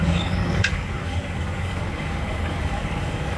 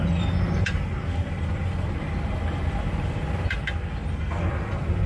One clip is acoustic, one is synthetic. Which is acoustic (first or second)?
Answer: second